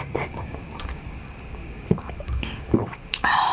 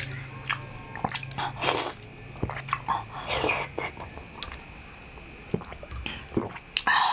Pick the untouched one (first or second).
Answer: second